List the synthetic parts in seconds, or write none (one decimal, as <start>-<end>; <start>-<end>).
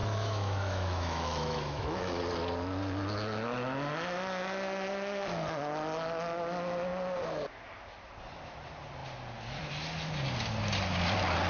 0.0-2.2